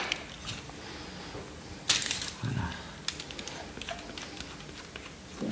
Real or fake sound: real